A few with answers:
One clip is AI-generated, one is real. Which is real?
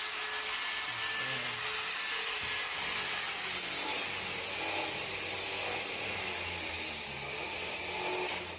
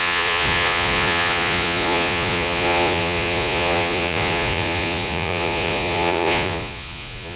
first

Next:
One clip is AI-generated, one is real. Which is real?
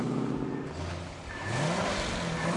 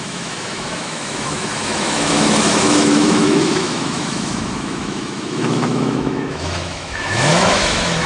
first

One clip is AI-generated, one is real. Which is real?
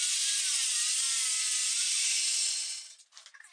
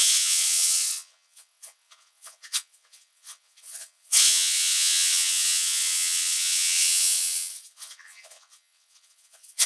first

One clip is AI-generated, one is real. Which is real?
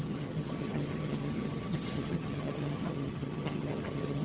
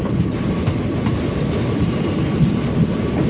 second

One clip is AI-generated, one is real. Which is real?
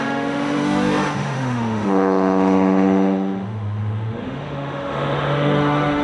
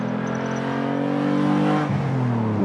second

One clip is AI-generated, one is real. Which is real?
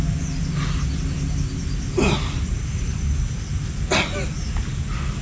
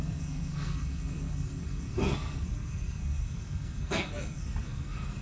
first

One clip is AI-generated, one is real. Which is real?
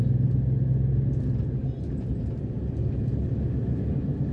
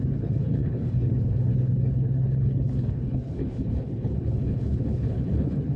first